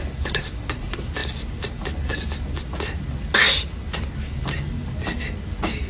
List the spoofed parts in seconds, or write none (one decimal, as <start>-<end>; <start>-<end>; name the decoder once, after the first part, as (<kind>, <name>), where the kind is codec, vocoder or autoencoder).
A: none